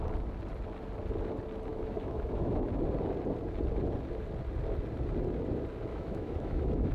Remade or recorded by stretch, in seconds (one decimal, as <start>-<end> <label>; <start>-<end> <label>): 0.0-1.7 recorded; 1.7-2.7 remade; 2.7-5.9 recorded; 5.9-6.9 remade